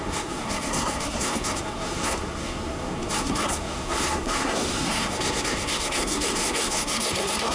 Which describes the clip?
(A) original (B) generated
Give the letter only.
B